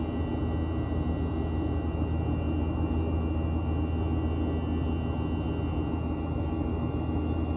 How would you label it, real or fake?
real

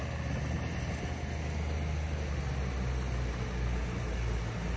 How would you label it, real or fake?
real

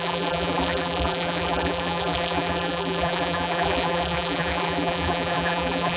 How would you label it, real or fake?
fake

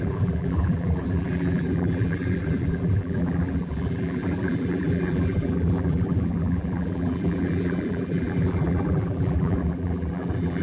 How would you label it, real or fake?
fake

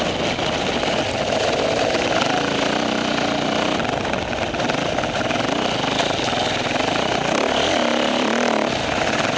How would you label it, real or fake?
real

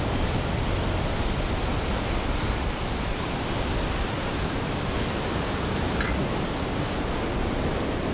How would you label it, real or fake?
real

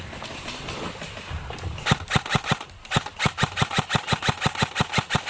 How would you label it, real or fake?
real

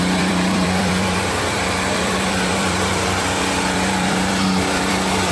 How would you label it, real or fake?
fake